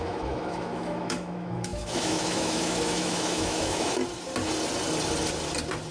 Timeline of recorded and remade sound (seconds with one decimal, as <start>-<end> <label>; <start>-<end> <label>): 0.0-4.0 remade; 4.0-5.9 recorded